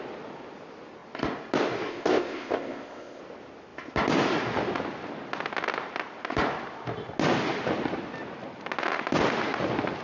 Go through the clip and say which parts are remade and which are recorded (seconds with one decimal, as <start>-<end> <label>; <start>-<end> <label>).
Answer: 0.0-1.9 recorded; 1.9-3.2 remade; 3.2-10.0 recorded